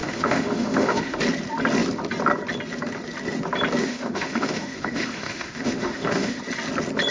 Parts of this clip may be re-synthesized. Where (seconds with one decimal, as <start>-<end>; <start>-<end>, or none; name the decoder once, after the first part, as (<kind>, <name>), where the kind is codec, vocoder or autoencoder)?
0.0-1.2 (autoencoder, DAC-VAE); 3.8-6.4

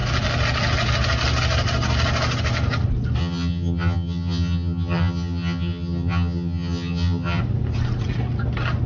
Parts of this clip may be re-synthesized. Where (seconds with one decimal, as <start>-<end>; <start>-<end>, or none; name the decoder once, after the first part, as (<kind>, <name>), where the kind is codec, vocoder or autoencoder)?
3.2-7.4 (vocoder, HiFi-GAN)